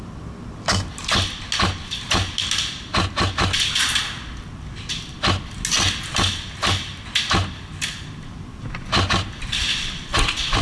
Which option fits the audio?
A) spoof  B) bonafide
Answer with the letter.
B